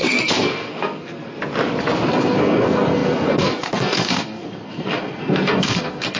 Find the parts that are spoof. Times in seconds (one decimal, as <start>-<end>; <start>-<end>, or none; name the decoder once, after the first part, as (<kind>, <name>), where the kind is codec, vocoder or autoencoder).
0.0-1.4 (codec, SNAC); 2.1-6.2